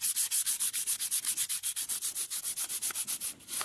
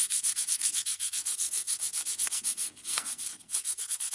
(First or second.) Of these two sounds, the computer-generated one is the second